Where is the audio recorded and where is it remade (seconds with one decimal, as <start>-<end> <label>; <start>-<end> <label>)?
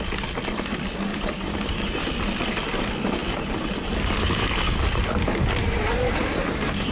0.0-1.1 recorded; 1.1-2.2 remade; 2.2-3.2 recorded; 3.2-6.9 remade